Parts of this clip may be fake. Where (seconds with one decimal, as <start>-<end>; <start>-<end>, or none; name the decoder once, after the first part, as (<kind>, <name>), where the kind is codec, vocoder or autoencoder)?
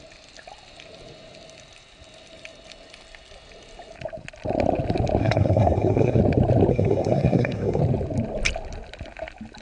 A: 5.2-6.2 (codec, SNAC); 6.7-7.8